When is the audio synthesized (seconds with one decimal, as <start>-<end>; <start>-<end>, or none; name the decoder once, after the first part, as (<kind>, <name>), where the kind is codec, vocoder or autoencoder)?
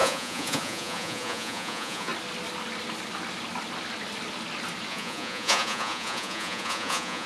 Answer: 0.0-2.1 (vocoder, Vocos); 4.9-7.3